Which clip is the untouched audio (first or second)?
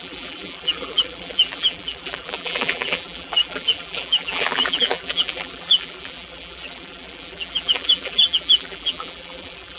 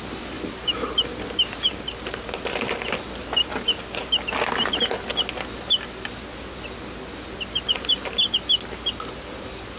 second